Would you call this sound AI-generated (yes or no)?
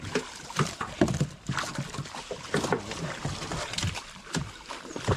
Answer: yes